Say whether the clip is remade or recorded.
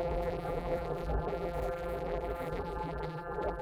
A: remade